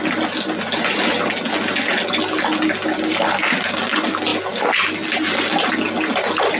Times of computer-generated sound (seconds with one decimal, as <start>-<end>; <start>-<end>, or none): none

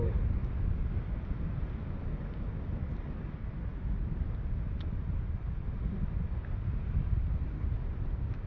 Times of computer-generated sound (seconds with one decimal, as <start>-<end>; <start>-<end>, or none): none

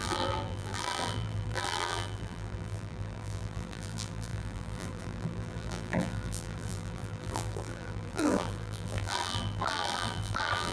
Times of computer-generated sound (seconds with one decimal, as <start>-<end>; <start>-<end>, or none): 0.0-10.7

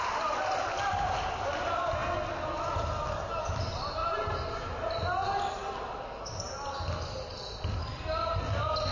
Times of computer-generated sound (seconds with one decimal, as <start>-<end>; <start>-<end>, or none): 4.0-5.0

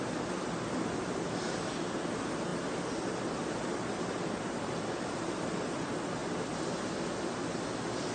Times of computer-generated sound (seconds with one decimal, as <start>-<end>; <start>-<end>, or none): none

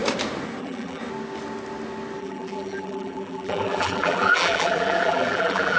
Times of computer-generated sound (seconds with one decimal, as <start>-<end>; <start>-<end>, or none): 0.6-1.0; 2.2-5.8

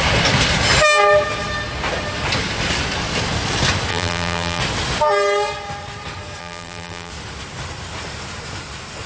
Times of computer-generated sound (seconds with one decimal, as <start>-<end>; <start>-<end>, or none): 3.9-4.6; 6.4-7.1